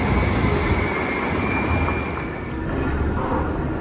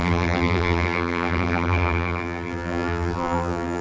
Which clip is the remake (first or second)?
second